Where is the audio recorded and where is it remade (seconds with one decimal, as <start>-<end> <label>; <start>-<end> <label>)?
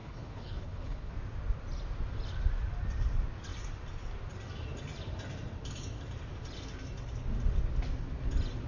0.0-1.1 remade; 1.1-8.7 recorded